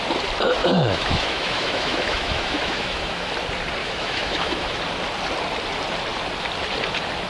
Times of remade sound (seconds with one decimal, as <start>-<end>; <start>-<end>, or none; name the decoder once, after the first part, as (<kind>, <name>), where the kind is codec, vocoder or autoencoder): 0.6-3.3 (autoencoder, DAC-VAE); 3.8-4.8